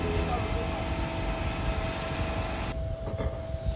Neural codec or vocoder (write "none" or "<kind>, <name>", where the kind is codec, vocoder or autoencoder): none